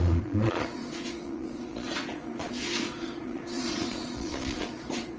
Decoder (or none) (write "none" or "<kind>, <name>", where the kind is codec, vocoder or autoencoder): vocoder, Vocos